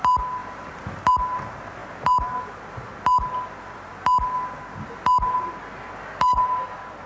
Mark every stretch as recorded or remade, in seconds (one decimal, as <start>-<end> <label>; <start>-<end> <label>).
0.0-7.1 recorded

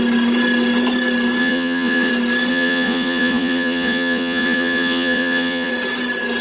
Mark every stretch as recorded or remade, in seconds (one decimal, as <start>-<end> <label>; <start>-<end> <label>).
0.0-1.4 recorded; 1.4-2.1 remade; 2.1-2.5 recorded; 2.5-5.7 remade; 5.7-6.4 recorded

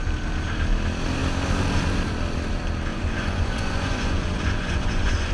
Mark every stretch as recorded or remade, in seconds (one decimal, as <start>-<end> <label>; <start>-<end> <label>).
0.0-2.9 recorded; 2.9-5.3 remade

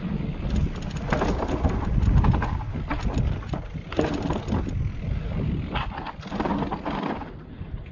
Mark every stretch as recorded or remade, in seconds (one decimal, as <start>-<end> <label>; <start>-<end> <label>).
0.0-7.9 recorded

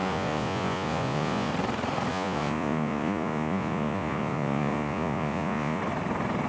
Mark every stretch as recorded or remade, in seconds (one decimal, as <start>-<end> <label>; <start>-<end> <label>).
0.0-1.5 remade; 1.5-2.1 recorded; 2.1-5.8 remade; 5.8-6.5 recorded

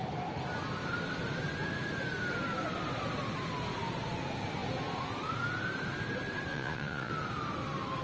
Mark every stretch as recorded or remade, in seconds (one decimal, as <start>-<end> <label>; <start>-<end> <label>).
0.0-6.5 recorded; 6.5-7.1 remade; 7.1-8.0 recorded